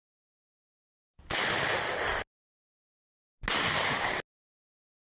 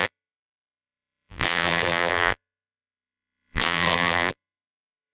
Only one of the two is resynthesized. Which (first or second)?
second